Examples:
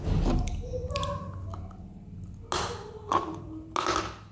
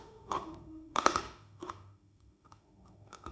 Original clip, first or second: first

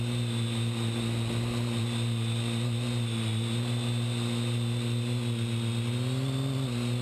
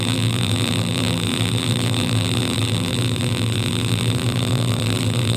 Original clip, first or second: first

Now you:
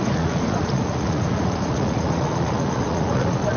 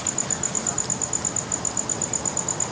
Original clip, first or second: second